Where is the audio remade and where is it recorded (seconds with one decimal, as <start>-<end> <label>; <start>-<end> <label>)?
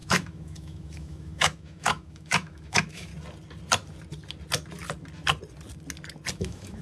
0.0-3.1 remade; 3.1-6.3 recorded; 6.3-6.8 remade